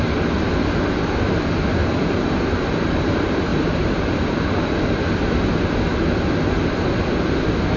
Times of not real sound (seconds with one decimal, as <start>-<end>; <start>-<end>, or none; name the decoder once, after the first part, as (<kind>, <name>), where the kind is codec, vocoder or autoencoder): 1.8-2.4 (vocoder, BigVGAN v2); 3.5-4.7